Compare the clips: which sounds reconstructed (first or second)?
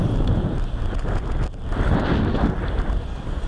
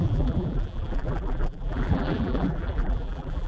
second